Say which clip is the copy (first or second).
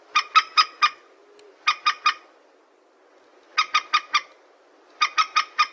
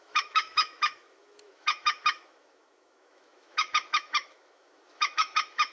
second